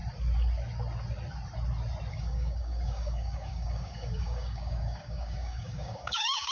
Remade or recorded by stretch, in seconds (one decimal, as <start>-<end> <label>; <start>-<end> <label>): 0.0-2.1 recorded; 2.1-6.5 remade